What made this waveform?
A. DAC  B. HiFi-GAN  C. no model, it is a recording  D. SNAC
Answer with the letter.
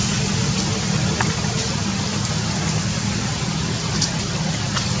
C